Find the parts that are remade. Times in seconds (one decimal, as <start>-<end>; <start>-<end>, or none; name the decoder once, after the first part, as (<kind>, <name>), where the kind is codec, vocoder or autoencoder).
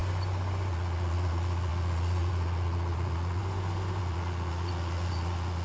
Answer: 0.7-3.4 (vocoder, Vocos); 4.0-5.6